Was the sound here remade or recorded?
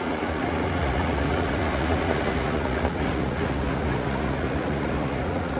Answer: remade